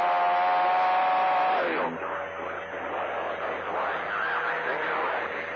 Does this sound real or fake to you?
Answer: real